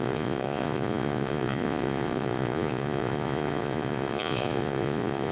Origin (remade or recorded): remade